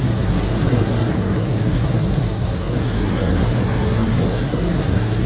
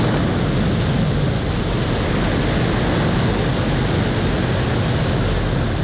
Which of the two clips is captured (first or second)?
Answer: second